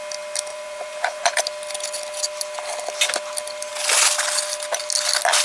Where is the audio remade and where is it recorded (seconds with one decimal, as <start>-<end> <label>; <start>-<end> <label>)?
0.0-0.5 recorded; 0.5-1.4 remade; 1.4-5.4 recorded